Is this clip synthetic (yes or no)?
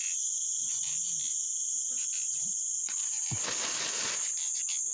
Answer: no